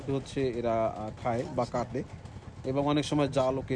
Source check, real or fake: real